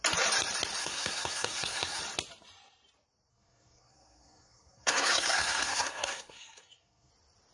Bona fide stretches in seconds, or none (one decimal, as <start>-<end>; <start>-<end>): 0.0-0.8; 2.0-3.3; 7.1-7.5